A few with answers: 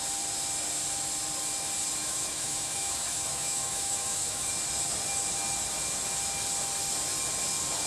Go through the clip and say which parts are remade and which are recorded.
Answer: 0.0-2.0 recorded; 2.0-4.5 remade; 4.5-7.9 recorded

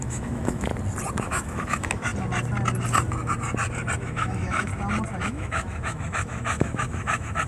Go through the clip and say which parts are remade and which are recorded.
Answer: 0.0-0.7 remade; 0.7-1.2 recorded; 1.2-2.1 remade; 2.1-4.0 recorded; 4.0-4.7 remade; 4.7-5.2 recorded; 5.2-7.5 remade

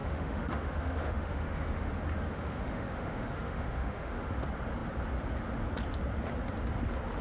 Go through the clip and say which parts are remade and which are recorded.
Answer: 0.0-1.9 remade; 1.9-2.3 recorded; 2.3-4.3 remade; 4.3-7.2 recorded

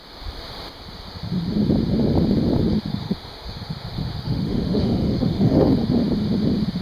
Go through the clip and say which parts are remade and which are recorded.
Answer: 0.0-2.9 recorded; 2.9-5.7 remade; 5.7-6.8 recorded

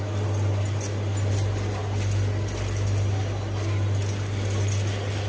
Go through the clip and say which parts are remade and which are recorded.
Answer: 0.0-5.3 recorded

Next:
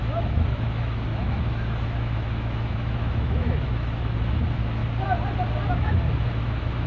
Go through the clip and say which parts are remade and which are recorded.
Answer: 0.0-4.8 remade; 4.8-5.7 recorded; 5.7-6.9 remade